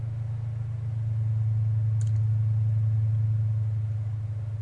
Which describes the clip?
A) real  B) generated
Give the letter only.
A